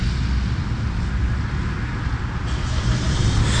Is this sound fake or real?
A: real